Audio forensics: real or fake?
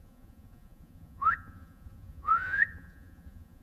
fake